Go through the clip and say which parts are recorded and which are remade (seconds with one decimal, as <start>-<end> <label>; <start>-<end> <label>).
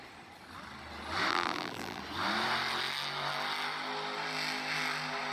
0.0-1.3 recorded; 1.3-2.0 remade; 2.0-5.3 recorded